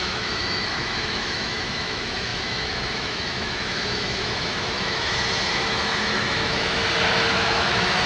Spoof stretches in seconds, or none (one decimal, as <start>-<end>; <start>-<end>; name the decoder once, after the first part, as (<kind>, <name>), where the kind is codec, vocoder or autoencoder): 0.0-6.8 (autoencoder, DAC-VAE); 7.3-8.1